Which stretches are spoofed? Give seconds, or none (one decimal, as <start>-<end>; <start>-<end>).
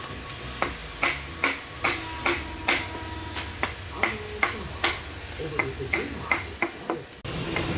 none